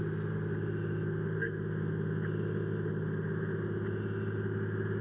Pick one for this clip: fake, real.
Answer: real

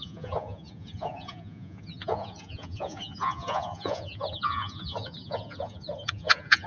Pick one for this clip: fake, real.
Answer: fake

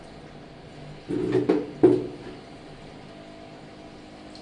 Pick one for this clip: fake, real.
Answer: real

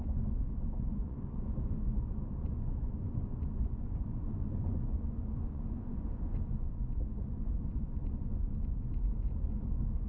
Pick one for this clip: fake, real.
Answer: fake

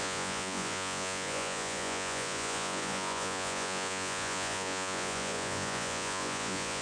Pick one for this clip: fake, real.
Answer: fake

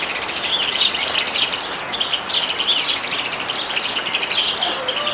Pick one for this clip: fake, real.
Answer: real